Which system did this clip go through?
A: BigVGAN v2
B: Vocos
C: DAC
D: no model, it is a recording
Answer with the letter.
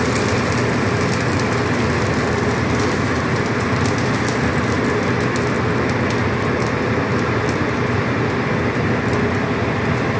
D